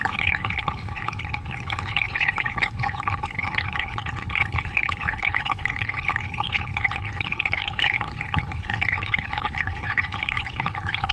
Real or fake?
fake